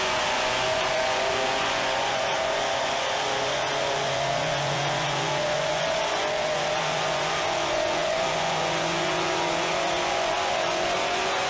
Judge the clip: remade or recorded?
remade